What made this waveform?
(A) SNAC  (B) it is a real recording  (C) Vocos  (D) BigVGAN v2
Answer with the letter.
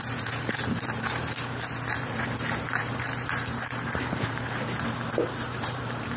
D